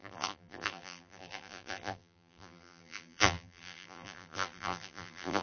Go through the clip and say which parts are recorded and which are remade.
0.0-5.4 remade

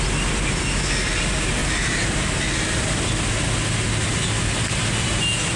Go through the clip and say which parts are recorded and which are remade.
0.0-1.6 recorded; 1.6-2.4 remade; 2.4-5.6 recorded

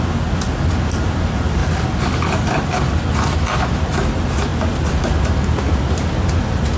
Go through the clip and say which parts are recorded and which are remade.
0.0-6.8 recorded

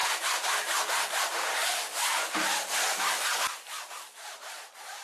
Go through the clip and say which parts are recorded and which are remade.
0.0-5.0 recorded